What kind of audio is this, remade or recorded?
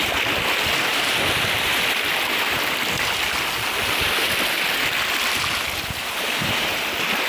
recorded